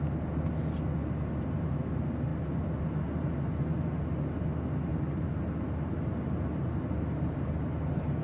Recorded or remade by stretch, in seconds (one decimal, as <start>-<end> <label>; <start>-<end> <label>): 0.0-4.9 recorded; 4.9-5.4 remade; 5.4-8.2 recorded